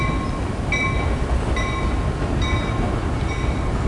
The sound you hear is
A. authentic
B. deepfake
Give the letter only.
A